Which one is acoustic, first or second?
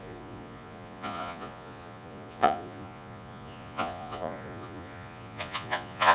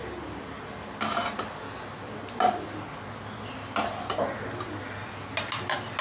second